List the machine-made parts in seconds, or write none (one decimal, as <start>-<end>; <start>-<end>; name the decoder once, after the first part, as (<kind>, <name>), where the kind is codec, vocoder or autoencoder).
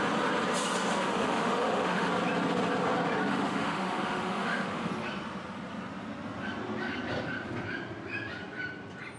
0.9-2.1 (autoencoder, DAC-VAE); 3.3-4.9